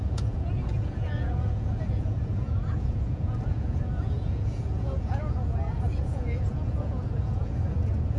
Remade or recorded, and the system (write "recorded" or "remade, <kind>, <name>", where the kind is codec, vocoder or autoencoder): remade, vocoder, Vocos